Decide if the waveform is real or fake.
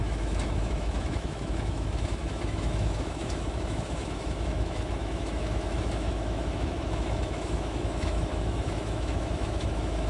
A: fake